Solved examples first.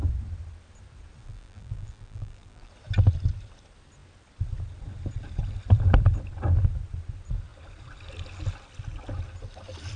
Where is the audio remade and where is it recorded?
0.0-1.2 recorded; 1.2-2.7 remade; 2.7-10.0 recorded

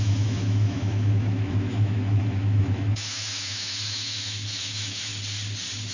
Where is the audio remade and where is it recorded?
0.0-5.1 remade; 5.1-5.9 recorded

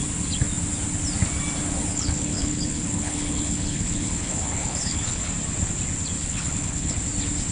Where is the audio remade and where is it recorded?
0.0-1.9 recorded; 1.9-5.3 remade; 5.3-6.2 recorded; 6.2-7.0 remade; 7.0-7.5 recorded

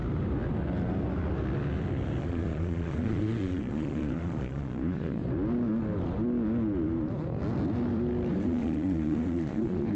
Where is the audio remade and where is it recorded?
0.0-2.2 recorded; 2.2-5.2 remade; 5.2-8.4 recorded; 8.4-10.0 remade